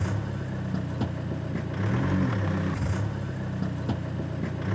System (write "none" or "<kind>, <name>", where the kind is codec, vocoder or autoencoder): none